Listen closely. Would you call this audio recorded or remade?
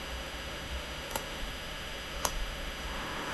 remade